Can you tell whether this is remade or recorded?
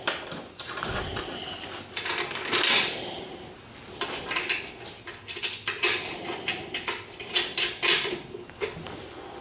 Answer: recorded